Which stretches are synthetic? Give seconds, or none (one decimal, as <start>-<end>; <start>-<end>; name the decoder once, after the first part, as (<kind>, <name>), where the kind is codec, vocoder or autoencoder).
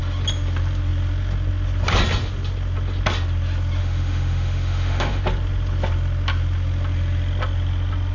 3.8-5.2 (autoencoder, DAC-VAE)